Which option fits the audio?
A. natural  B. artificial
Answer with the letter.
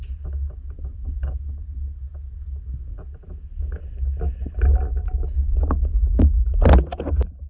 A